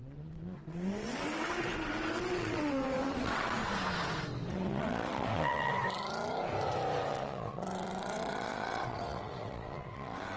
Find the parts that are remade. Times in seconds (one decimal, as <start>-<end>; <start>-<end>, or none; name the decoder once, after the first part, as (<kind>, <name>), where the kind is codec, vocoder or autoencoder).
0.0-3.6 (vocoder, WaveNeXt); 4.5-5.7; 7.1-10.4